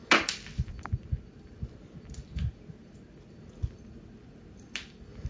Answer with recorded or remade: recorded